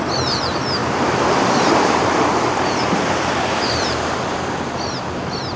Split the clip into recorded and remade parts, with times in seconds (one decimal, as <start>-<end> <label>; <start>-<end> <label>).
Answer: 0.0-0.8 recorded; 0.8-4.2 remade; 4.2-5.6 recorded